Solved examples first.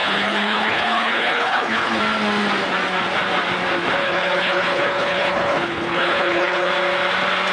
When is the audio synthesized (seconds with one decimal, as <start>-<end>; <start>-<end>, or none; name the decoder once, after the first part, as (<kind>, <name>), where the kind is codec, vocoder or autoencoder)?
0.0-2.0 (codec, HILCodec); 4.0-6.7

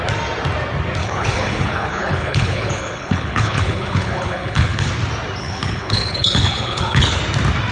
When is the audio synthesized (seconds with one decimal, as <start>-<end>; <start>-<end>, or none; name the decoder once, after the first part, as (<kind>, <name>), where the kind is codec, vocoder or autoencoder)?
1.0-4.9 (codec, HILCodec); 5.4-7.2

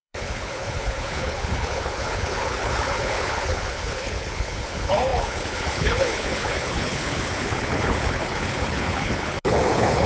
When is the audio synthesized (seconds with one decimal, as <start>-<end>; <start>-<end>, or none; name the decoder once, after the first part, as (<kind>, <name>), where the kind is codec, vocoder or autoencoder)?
0.0-10.1 (codec, HILCodec)

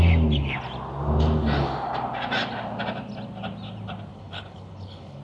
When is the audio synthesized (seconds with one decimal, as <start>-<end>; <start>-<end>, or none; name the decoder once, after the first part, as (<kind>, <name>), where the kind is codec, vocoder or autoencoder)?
4.1-5.2 (codec, HILCodec)

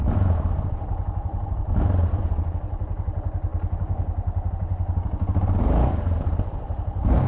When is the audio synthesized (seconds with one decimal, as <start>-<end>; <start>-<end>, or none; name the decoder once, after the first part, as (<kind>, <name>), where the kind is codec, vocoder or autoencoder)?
none

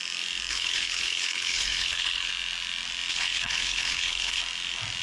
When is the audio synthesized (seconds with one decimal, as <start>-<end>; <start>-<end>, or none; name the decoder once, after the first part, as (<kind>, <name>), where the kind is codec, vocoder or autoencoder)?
0.5-2.3 (codec, HILCodec); 3.1-4.4